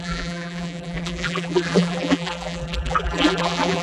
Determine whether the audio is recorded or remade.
remade